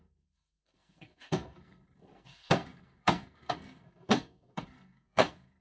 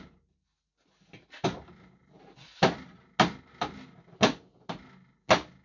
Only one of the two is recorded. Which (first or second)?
second